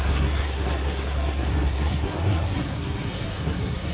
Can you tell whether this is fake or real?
fake